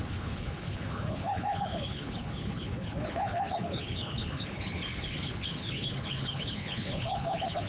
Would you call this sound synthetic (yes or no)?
yes